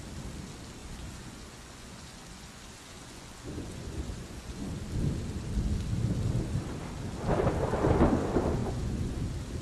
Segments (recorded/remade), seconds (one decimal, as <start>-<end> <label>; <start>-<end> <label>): 0.0-0.8 recorded; 0.8-4.7 remade; 4.7-8.6 recorded; 8.6-9.2 remade; 9.2-9.6 recorded